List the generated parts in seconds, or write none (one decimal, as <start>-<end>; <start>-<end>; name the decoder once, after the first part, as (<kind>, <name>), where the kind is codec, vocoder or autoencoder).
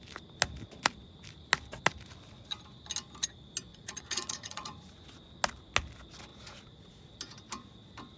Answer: 3.7-5.1 (vocoder, Vocos); 6.3-7.1